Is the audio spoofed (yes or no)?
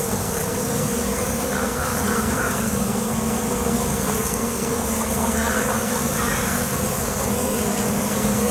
yes